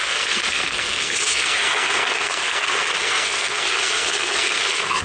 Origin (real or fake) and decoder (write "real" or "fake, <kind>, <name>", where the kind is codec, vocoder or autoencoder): fake, codec, SNAC